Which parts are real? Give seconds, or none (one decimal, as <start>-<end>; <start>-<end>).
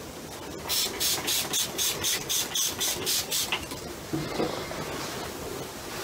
0.0-0.7; 1.5-6.0